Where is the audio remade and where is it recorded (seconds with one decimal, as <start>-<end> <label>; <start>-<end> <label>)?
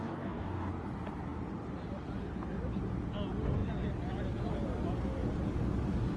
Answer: 0.0-0.7 remade; 0.7-6.2 recorded